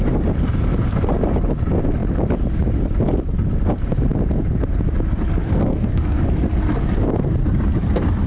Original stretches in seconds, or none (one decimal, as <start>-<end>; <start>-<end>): 0.0-5.4; 6.2-8.3